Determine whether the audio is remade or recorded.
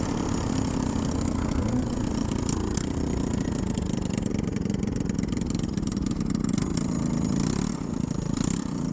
recorded